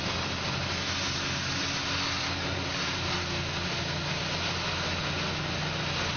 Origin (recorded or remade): recorded